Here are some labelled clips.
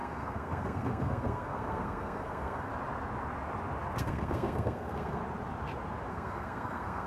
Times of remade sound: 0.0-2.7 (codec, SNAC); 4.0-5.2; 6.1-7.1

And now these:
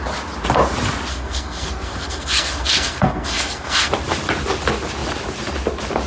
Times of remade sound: 1.1-3.9 (codec, SNAC)

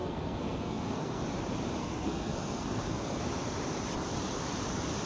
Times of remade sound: 0.0-1.2 (codec, SNAC); 1.8-3.2

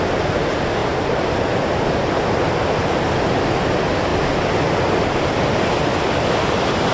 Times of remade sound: none

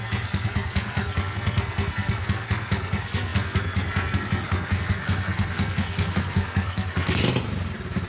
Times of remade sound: 0.0-7.2 (codec, SNAC)

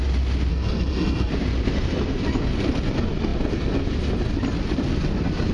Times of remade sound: 0.5-1.3 (codec, SNAC)

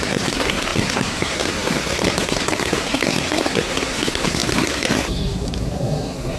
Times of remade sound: 0.0-6.4 (codec, SNAC)